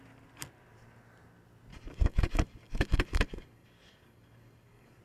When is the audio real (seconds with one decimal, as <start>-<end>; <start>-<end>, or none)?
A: 0.0-1.7